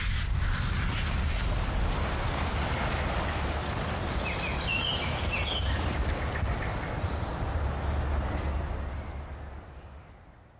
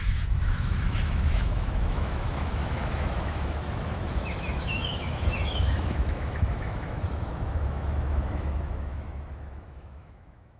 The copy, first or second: second